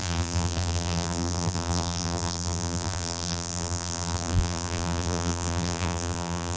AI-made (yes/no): yes